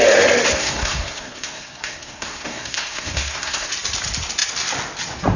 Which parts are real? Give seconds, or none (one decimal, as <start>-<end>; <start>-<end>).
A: 0.0-0.5; 3.7-5.4